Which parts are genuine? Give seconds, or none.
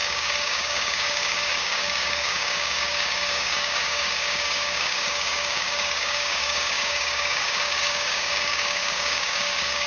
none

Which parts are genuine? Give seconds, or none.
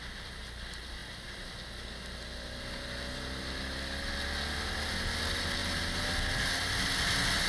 0.0-7.5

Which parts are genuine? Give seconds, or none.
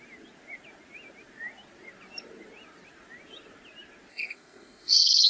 0.0-4.1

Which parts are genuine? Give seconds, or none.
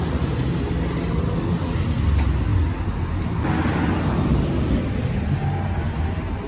0.0-6.5